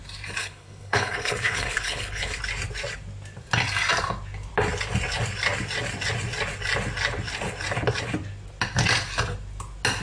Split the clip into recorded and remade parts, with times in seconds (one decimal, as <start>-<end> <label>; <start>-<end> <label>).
0.0-0.4 recorded; 0.4-2.4 remade; 2.4-10.0 recorded